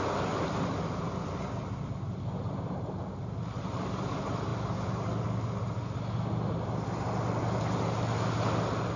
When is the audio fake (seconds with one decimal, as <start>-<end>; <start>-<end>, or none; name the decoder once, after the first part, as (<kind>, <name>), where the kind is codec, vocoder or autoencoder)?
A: none